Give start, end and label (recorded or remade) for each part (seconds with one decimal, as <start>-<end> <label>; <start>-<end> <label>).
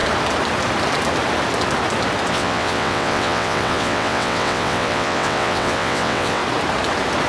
0.0-2.3 recorded; 2.3-6.4 remade; 6.4-7.3 recorded